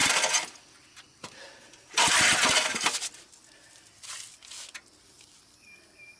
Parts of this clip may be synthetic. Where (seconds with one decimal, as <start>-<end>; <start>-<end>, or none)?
none